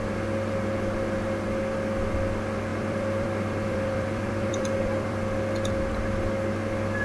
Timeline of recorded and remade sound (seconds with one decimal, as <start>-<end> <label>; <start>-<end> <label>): 0.0-2.7 recorded; 2.7-5.2 remade; 5.2-7.0 recorded